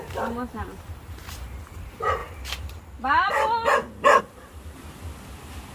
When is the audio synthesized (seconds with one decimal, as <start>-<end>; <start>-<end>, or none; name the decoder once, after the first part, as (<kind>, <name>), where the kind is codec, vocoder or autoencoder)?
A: 0.0-2.2 (vocoder, BigVGAN v2); 4.2-4.8